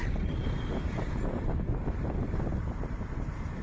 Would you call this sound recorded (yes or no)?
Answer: yes